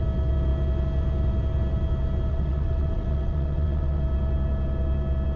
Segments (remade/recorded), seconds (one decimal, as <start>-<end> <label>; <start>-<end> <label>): 0.0-2.3 recorded; 2.3-4.0 remade; 4.0-5.4 recorded